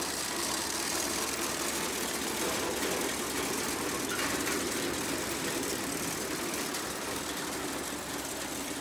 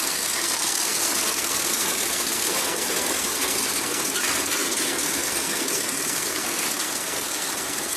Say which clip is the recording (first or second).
first